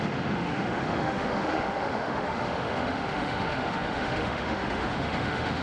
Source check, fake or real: fake